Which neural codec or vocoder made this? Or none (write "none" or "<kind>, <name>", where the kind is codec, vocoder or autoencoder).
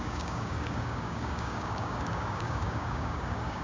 codec, DAC